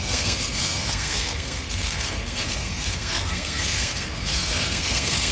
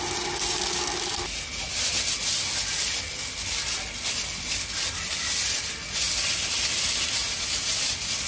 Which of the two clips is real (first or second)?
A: second